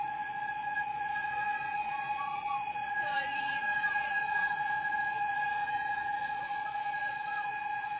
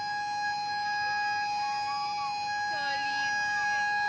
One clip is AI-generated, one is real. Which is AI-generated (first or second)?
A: first